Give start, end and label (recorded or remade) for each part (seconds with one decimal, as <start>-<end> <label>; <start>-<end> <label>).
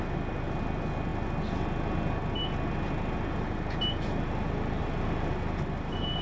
0.0-6.2 recorded